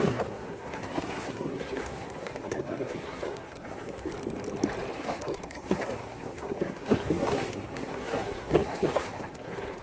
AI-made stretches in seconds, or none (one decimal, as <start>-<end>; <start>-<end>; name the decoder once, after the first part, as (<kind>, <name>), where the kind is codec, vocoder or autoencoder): 0.0-4.1 (codec, SNAC); 4.9-9.8